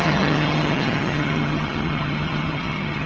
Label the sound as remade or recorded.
remade